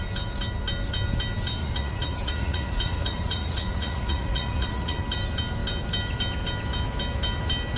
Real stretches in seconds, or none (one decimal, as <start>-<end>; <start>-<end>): 0.0-1.6; 5.0-7.8